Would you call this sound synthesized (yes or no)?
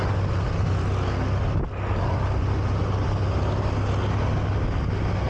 no